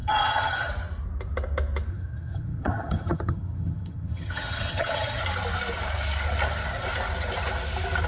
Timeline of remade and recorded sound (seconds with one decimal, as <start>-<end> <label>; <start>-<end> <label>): 0.0-0.7 remade; 0.7-1.9 recorded; 1.9-5.2 remade; 5.2-8.1 recorded